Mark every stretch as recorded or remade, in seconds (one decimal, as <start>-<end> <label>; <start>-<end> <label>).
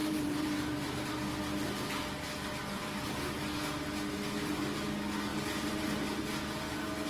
0.0-1.4 remade; 1.4-5.3 recorded; 5.3-6.2 remade; 6.2-7.1 recorded